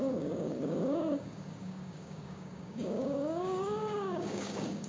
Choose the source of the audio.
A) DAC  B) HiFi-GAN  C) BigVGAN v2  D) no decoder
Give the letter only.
A